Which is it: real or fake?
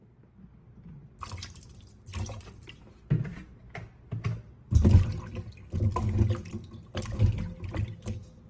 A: real